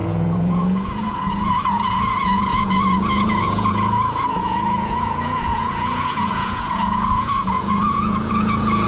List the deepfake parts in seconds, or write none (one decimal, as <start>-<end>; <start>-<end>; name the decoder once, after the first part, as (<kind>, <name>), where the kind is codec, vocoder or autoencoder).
0.0-8.9 (vocoder, Vocos)